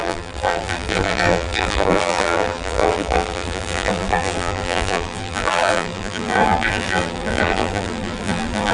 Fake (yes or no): yes